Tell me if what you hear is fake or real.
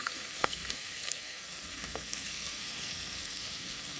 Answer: fake